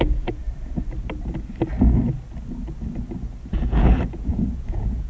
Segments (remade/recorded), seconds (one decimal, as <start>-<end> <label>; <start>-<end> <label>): 0.0-0.4 remade; 0.4-3.5 recorded; 3.5-5.1 remade

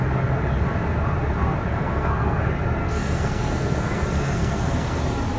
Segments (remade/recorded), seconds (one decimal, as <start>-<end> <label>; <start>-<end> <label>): 0.0-1.7 recorded; 1.7-2.4 remade; 2.4-2.8 recorded; 2.8-5.0 remade; 5.0-5.4 recorded

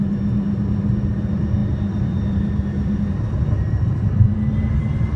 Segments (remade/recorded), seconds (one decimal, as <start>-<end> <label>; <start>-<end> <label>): 0.0-1.6 recorded; 1.6-3.8 remade; 3.8-5.2 recorded

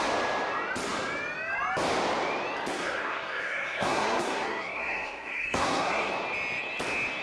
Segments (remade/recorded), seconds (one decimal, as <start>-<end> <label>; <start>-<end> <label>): 0.0-2.7 recorded; 2.7-6.1 remade; 6.1-7.2 recorded

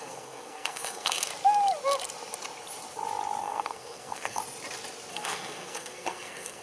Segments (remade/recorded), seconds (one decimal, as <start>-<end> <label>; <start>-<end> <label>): 0.0-1.3 remade; 1.3-3.4 recorded; 3.4-4.4 remade; 4.4-5.1 recorded; 5.1-6.6 remade

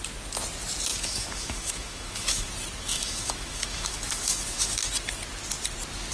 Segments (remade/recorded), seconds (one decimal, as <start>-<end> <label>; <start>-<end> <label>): 0.0-0.9 recorded; 0.9-2.5 remade; 2.5-2.9 recorded; 2.9-4.9 remade; 4.9-6.1 recorded